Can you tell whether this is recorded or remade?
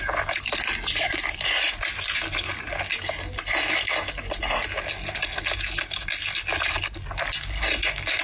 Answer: recorded